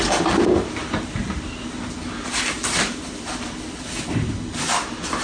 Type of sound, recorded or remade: recorded